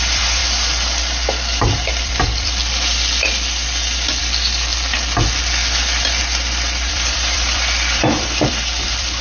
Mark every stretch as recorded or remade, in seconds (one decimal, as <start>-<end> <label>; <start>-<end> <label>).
0.0-0.4 remade; 0.4-1.6 recorded; 1.6-2.6 remade; 2.6-4.2 recorded; 4.2-4.7 remade; 4.7-6.2 recorded; 6.2-9.2 remade